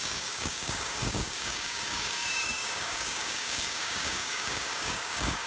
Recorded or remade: remade